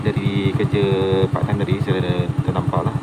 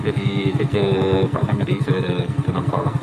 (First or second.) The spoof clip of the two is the second